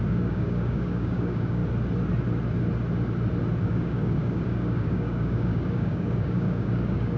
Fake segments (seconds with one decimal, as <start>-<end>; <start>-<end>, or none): 0.0-1.6; 3.6-7.2